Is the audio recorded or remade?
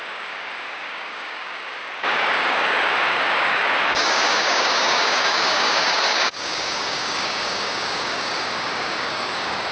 remade